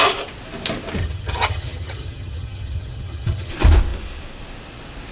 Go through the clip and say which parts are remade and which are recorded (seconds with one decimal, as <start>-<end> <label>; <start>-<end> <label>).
0.0-1.0 recorded; 1.0-3.5 remade; 3.5-5.1 recorded